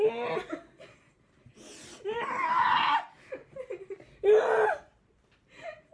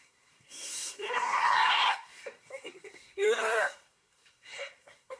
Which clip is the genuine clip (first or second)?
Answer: first